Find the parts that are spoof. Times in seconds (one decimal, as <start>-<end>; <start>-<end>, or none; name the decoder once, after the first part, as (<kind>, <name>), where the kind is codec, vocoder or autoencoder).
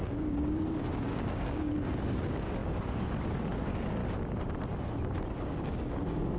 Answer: 0.0-4.0 (codec, DAC); 5.3-6.4